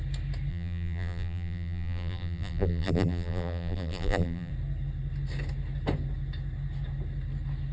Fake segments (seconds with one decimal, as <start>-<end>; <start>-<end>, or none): 0.5-4.5